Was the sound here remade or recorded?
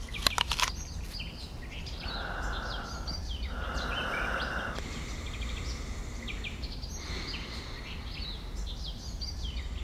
recorded